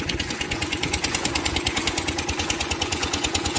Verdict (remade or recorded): remade